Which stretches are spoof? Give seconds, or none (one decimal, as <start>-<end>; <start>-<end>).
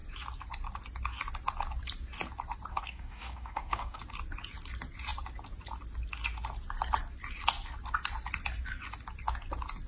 2.7-4.0